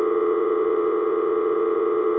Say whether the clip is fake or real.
fake